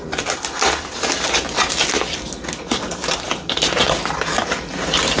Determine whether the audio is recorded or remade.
recorded